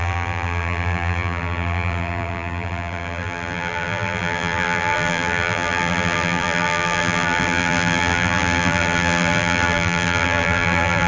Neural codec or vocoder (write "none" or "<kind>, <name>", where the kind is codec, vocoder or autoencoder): vocoder, BigVGAN v2